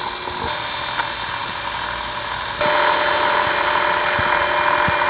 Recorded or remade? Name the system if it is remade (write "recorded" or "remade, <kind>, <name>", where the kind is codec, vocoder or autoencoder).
recorded